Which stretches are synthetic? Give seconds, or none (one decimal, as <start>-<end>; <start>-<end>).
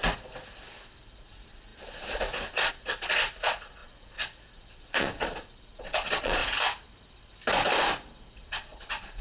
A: 1.0-6.4; 8.2-9.2